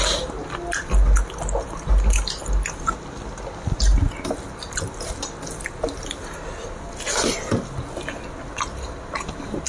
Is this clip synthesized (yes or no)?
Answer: no